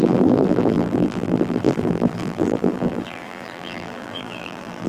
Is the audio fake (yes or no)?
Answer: yes